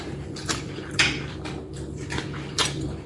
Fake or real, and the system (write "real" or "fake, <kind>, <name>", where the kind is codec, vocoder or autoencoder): fake, vocoder, BigVGAN v2